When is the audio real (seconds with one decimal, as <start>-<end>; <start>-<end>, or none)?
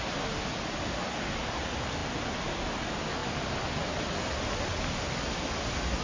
0.0-6.0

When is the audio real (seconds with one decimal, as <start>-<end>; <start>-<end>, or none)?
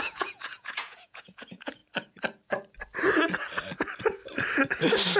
1.8-5.2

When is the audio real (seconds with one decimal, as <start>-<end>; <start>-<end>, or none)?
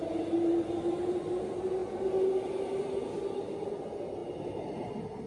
0.0-5.3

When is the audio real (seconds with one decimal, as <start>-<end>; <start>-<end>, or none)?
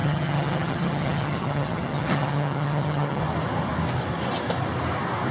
3.2-5.3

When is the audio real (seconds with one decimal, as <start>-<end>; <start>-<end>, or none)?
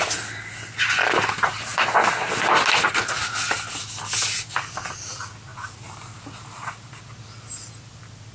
0.0-8.3